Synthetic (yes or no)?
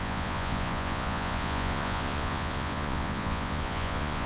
yes